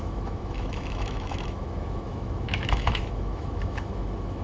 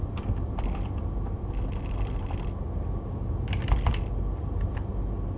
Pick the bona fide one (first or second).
second